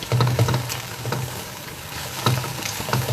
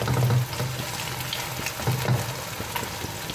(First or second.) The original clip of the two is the second